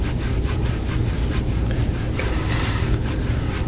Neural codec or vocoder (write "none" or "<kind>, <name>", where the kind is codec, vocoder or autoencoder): none